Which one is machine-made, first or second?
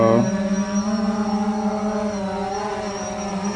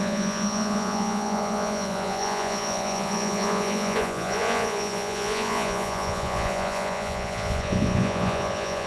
second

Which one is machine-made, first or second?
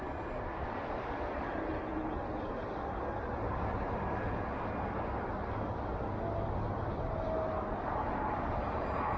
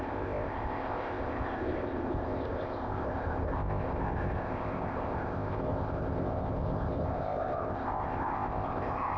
second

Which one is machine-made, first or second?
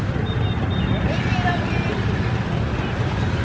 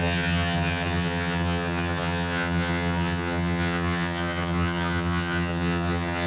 second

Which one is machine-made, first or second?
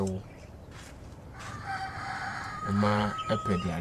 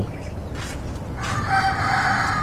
first